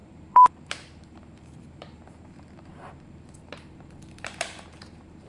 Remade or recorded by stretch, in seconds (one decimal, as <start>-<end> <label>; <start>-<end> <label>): 0.0-5.3 remade